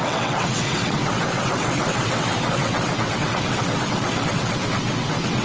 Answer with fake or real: fake